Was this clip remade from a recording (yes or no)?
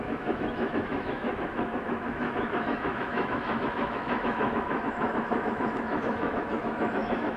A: yes